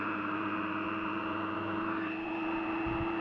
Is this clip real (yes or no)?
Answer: no